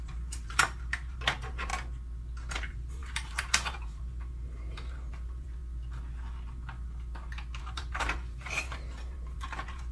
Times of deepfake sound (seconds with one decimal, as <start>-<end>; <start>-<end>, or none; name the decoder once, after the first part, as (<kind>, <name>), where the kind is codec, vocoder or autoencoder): 0.0-1.7 (vocoder, BigVGAN v2); 2.5-5.6; 7.6-9.9